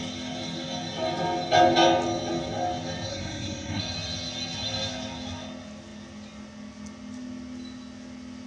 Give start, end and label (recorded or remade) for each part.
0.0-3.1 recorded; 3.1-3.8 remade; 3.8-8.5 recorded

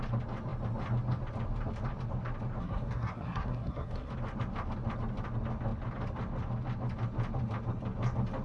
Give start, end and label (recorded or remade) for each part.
0.0-2.6 recorded; 2.6-4.1 remade; 4.1-8.4 recorded

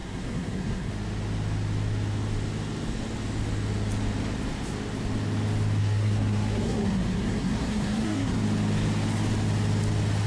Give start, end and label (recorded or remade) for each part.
0.0-0.9 remade; 0.9-5.8 recorded; 5.8-8.4 remade; 8.4-10.3 recorded